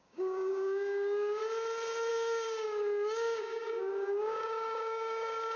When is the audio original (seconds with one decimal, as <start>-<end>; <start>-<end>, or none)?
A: 1.4-2.1